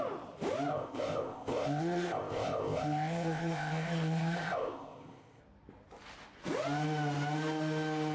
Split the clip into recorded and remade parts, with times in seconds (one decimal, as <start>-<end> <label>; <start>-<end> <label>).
0.0-0.7 recorded; 0.7-5.4 remade; 5.4-8.1 recorded